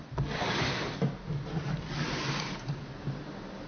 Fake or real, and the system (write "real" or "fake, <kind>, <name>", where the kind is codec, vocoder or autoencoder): real